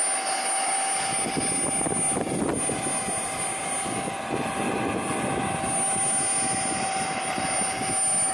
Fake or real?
real